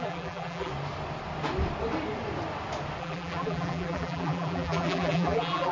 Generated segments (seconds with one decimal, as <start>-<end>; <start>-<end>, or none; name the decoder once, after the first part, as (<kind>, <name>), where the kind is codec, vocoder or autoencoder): 0.0-0.7 (vocoder, BigVGAN v2); 3.0-5.7